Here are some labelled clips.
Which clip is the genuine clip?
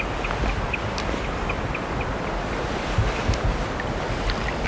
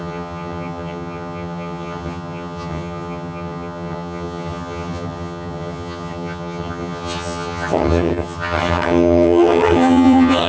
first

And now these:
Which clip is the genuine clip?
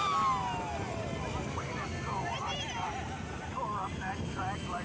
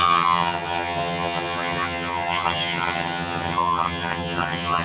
first